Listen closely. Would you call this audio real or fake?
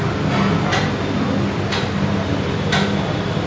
real